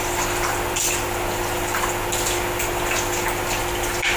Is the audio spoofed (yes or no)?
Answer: no